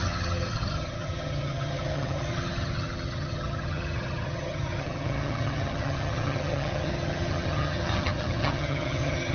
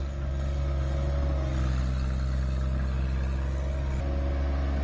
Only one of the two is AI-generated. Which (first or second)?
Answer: first